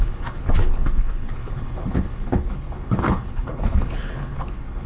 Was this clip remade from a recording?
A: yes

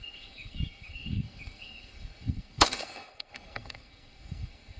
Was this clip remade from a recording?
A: yes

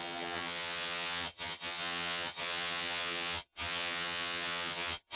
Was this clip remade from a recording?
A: yes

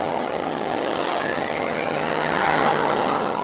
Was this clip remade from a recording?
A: yes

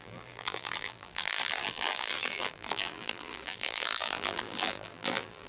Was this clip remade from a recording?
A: yes